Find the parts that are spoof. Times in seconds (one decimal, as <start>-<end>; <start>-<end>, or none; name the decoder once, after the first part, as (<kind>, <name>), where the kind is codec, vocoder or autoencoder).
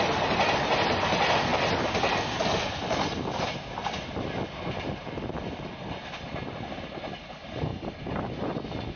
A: none